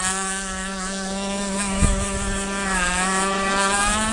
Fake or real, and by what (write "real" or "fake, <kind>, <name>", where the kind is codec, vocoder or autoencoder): fake, autoencoder, DAC-VAE